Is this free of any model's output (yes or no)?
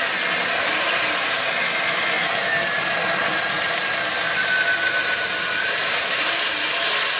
yes